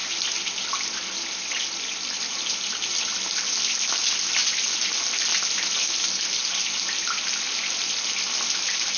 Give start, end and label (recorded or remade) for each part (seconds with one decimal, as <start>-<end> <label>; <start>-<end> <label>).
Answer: 0.0-9.0 recorded